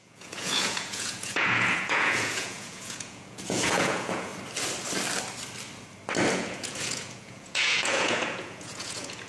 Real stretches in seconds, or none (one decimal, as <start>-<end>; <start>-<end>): 4.3-6.3